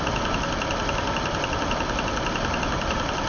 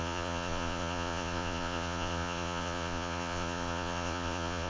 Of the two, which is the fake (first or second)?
second